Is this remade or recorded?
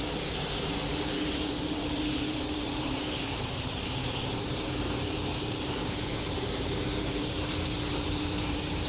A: remade